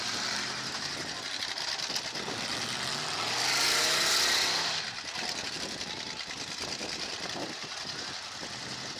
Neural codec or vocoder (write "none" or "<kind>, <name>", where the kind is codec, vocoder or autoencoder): none